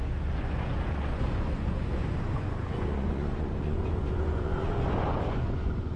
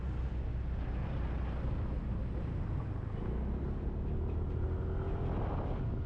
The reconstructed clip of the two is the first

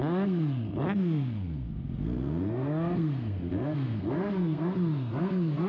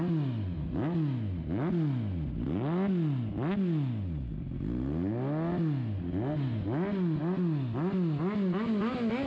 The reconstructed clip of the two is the first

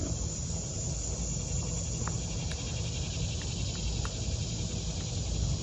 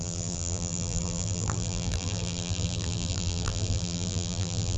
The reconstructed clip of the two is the second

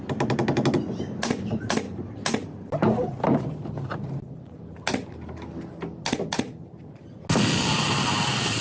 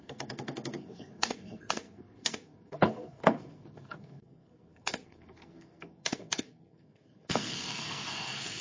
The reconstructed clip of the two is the second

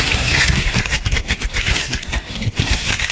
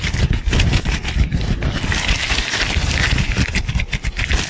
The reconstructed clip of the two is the first